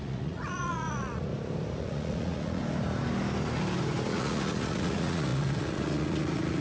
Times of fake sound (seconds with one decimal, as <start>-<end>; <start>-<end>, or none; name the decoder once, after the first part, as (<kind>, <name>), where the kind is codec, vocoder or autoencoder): 0.0-1.3 (vocoder, Vocos); 1.8-2.6; 4.1-6.6